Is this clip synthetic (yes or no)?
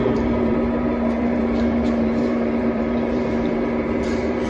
yes